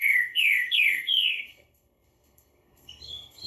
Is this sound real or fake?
fake